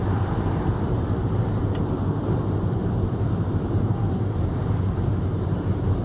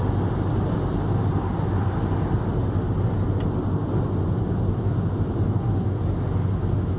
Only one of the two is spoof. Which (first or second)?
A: first